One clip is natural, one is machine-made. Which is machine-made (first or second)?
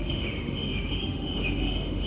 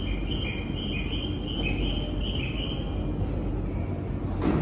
first